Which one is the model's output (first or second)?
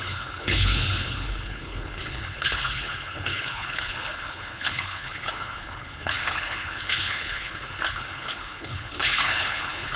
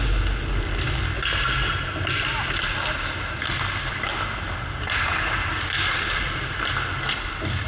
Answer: first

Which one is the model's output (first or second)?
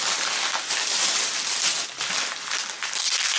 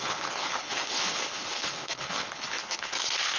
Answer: second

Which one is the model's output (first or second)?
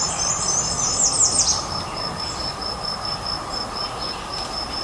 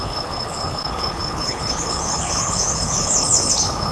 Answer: second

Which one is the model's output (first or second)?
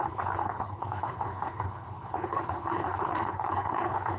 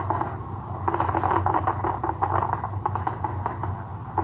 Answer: first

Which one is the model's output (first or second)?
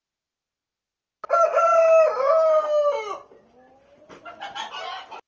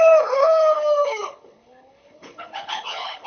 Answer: second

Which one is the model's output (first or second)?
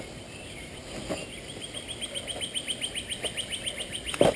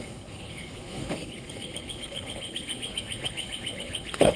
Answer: second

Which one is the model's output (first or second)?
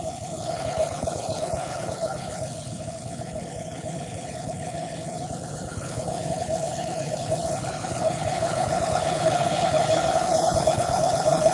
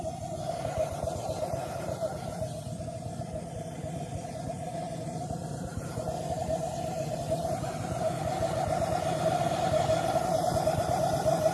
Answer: first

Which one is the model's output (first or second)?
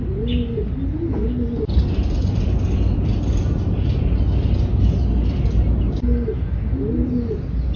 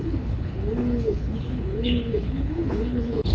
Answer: second